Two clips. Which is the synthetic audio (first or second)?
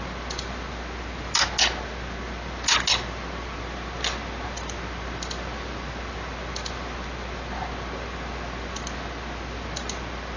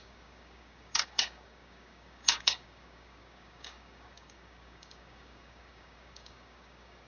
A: second